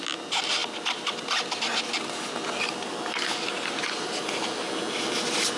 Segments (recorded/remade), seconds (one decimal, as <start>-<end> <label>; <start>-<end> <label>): 0.0-5.6 recorded